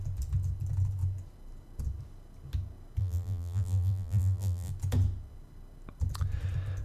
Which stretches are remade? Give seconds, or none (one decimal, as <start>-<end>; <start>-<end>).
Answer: 3.0-4.7